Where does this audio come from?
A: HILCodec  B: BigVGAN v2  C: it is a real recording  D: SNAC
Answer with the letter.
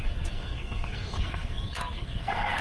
D